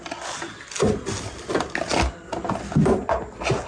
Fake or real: real